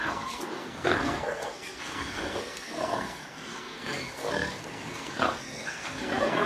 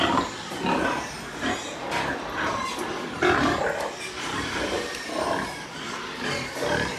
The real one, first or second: second